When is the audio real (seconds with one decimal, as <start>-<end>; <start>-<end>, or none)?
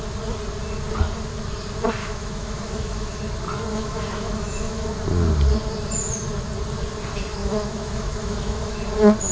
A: 0.0-2.0; 3.2-3.7; 4.9-7.4; 8.8-9.3